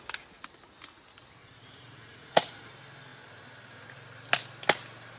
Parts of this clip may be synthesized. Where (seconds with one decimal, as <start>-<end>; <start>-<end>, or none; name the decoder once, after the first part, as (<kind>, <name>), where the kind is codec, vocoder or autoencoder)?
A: 1.4-2.7 (vocoder, Vocos)